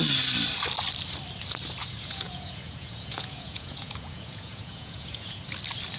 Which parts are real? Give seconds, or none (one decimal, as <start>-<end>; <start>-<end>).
0.0-1.8; 5.4-6.0